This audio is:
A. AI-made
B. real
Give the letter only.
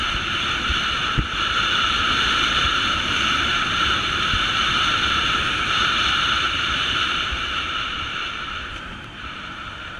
A